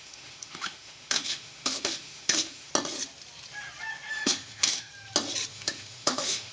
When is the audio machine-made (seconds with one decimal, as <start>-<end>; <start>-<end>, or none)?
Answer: 0.0-2.7; 4.1-4.9; 5.5-6.5